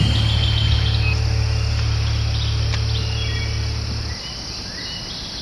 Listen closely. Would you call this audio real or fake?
real